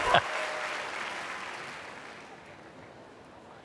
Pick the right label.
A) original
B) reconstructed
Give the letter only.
A